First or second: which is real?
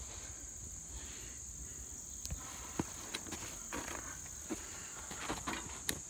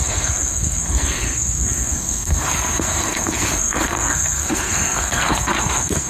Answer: first